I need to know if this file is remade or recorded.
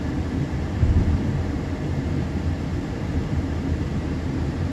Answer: remade